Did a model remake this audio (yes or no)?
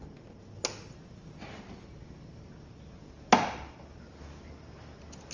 no